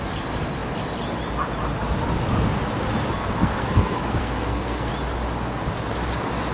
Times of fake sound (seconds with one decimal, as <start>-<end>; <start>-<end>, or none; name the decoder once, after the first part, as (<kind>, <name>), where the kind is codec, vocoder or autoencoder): 3.0-4.9 (codec, SNAC)